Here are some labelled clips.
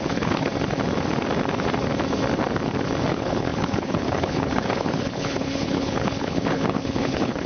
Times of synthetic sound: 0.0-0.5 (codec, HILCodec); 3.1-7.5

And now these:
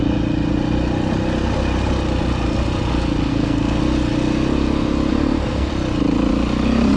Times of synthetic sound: 3.3-3.8 (codec, SNAC); 5.1-5.7

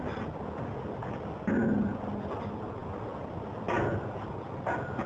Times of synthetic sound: none

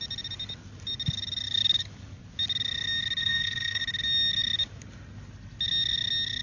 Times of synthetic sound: 3.2-3.8 (codec, SNAC)

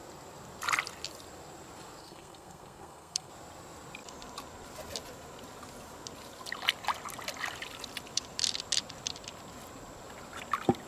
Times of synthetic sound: 2.0-3.3 (codec, SNAC)

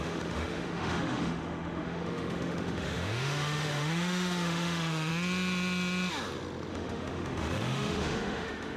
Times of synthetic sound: 0.0-5.1 (autoencoder, DAC-VAE); 6.7-8.8